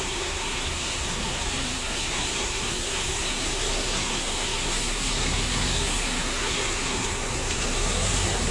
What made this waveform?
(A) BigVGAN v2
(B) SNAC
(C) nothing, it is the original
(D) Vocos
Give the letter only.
B